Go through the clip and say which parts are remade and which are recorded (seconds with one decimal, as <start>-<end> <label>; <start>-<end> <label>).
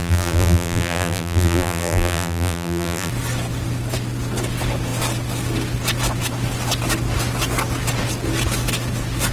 0.0-3.1 remade; 3.1-9.3 recorded